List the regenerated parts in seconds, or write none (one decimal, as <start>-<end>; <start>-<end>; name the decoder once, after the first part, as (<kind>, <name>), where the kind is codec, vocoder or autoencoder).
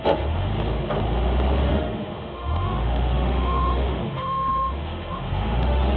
0.0-0.5 (autoencoder, DAC-VAE); 1.7-6.0